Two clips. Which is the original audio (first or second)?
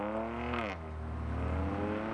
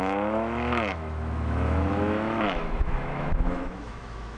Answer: first